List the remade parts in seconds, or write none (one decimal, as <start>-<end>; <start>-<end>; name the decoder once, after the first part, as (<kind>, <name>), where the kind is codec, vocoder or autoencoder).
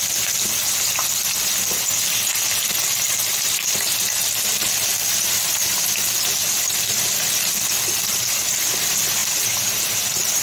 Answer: 3.3-6.2 (vocoder, BigVGAN v2); 9.2-10.4